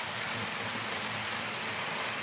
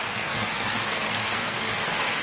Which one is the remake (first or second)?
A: second